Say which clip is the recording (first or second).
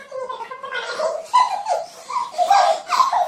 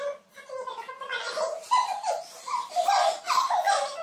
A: second